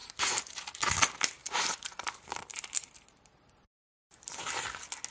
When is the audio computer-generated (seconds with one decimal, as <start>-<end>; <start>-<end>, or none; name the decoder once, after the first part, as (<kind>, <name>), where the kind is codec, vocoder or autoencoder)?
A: 0.0-0.7 (vocoder, BigVGAN v2); 1.4-4.5

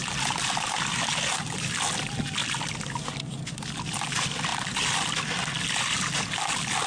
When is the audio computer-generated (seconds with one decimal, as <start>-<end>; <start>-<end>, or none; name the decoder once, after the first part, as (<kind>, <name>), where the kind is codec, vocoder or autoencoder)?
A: none